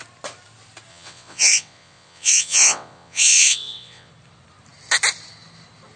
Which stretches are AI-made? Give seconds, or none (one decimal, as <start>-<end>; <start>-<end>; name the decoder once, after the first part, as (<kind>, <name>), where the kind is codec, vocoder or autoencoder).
0.9-4.1 (vocoder, WaveNeXt)